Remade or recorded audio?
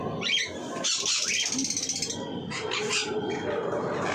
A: recorded